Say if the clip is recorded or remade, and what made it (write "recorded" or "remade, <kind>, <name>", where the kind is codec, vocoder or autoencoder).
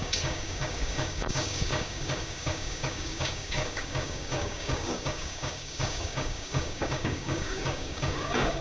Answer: remade, codec, DAC